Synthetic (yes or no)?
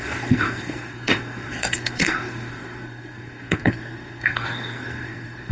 yes